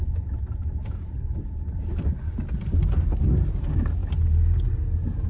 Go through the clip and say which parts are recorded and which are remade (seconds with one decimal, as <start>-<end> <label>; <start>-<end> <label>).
0.0-5.3 recorded